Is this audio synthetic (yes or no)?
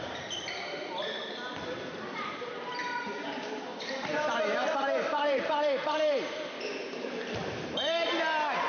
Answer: yes